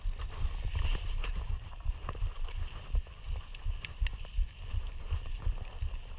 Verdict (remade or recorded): recorded